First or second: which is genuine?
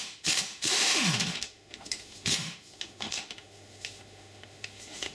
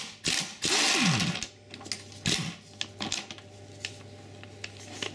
second